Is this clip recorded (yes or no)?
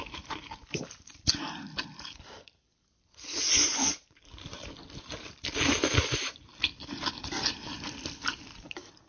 no